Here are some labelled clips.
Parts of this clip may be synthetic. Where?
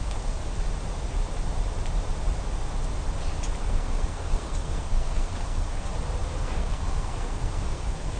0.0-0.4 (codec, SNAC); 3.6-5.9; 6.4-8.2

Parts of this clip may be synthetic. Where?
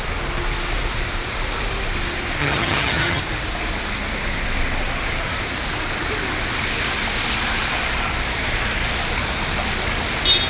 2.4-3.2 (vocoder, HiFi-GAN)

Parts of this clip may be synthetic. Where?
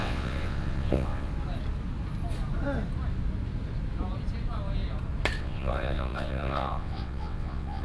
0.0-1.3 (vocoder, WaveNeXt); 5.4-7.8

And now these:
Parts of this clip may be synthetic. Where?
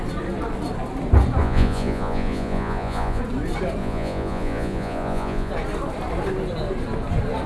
1.4-3.2 (vocoder, Vocos); 3.8-5.5